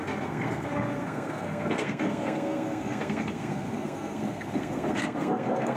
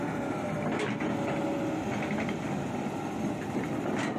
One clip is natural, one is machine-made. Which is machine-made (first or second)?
first